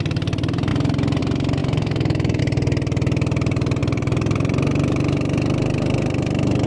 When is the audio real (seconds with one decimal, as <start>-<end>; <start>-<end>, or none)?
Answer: 0.0-1.6; 2.4-6.7